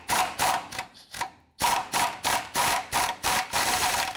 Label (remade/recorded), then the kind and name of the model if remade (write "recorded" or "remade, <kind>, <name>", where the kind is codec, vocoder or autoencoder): remade, vocoder, BigVGAN v2